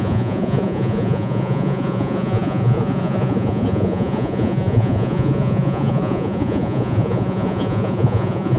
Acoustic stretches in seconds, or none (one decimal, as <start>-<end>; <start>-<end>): none